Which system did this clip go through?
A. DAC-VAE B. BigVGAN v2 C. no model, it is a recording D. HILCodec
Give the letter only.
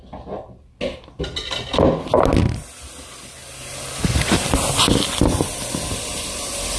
C